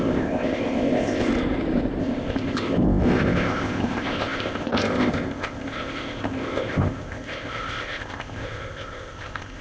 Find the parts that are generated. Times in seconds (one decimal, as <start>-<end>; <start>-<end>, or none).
0.0-1.3; 2.0-9.6